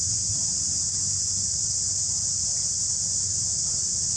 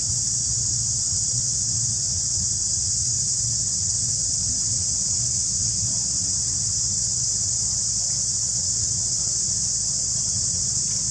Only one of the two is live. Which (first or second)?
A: first